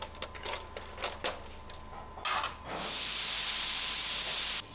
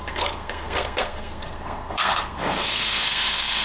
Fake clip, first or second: second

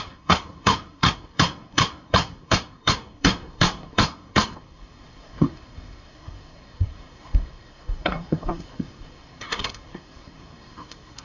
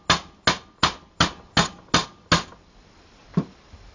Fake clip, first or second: first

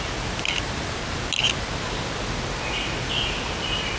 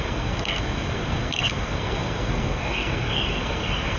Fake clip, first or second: second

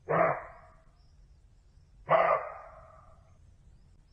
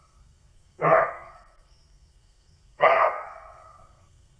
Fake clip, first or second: second